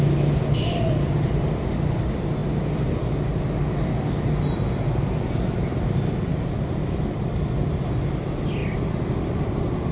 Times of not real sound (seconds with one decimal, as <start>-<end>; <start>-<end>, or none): none